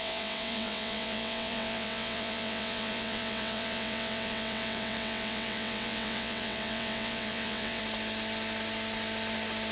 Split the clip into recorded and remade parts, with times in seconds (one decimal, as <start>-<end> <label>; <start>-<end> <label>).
0.0-7.8 remade; 7.8-9.7 recorded